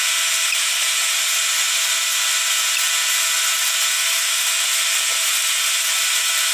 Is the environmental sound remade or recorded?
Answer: recorded